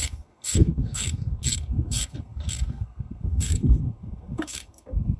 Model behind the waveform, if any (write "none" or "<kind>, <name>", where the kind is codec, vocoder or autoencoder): codec, SNAC